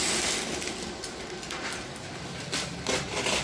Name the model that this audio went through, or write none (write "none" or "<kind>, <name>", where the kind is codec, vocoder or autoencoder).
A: none